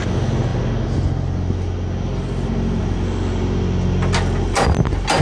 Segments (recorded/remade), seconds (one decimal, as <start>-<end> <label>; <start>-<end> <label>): 0.0-5.2 recorded